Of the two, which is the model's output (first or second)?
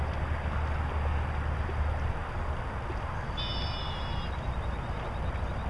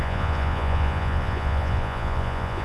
second